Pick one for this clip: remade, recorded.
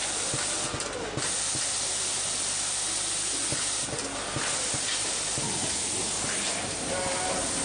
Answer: recorded